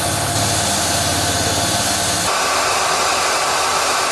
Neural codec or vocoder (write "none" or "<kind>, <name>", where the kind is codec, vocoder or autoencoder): none